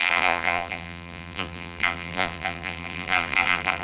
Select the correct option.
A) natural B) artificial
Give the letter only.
B